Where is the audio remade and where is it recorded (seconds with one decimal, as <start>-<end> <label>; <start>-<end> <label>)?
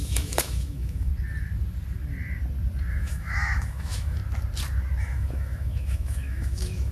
0.0-1.1 remade; 1.1-2.9 recorded; 2.9-4.2 remade; 4.2-5.0 recorded; 5.0-6.9 remade